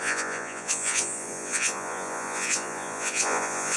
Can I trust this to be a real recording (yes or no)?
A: no